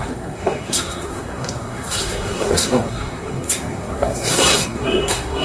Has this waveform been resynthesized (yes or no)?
yes